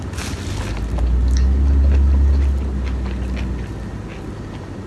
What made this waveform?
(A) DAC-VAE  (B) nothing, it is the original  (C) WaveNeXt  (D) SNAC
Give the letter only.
B